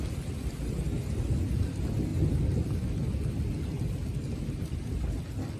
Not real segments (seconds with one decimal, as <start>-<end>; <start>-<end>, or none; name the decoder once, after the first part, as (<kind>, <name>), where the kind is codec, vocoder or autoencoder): none